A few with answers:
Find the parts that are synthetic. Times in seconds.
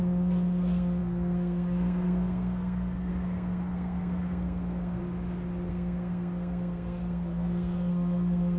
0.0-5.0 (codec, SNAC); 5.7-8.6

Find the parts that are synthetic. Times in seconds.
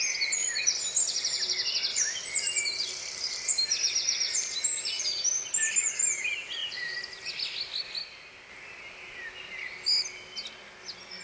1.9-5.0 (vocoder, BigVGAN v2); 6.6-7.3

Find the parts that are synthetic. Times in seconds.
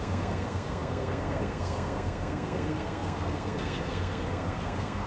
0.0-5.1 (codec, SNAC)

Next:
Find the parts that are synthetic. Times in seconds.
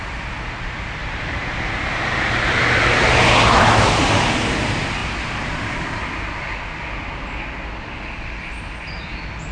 1.0-2.8 (vocoder, BigVGAN v2); 5.0-6.0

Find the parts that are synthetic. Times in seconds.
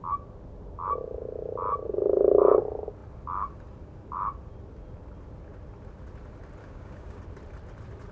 6.6-7.2 (codec, DAC)